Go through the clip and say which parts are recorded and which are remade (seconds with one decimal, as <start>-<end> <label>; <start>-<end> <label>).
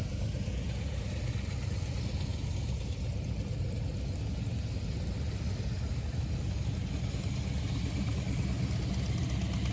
0.0-9.7 recorded